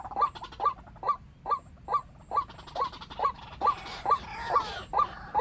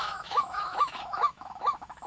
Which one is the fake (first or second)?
second